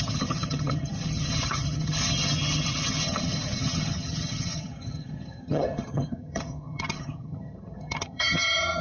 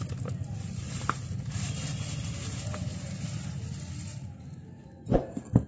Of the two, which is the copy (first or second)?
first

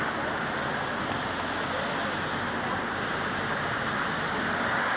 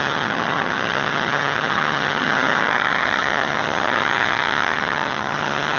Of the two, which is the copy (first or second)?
second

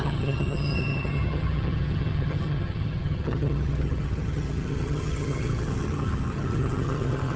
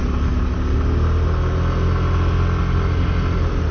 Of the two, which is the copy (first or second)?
first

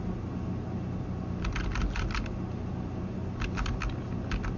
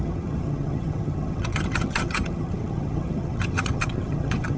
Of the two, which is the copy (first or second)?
second